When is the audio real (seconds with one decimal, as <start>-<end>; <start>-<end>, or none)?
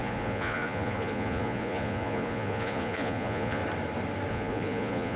3.6-4.3